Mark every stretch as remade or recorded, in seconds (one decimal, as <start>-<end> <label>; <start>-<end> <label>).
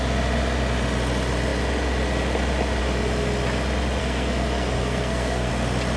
0.0-4.0 recorded; 4.0-5.5 remade; 5.5-6.0 recorded